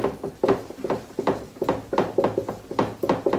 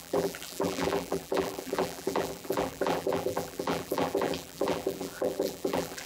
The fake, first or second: second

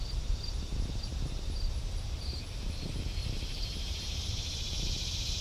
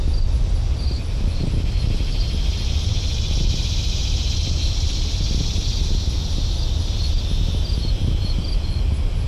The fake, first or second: first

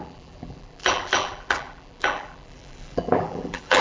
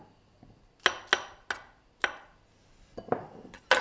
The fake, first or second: first